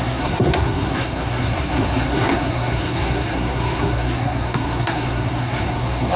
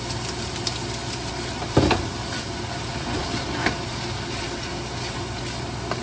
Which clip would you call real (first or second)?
second